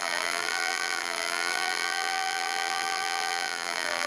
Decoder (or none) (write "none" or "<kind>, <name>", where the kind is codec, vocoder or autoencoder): vocoder, BigVGAN v2